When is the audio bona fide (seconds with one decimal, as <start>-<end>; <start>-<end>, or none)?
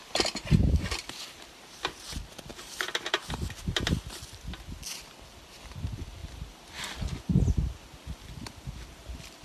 0.0-9.4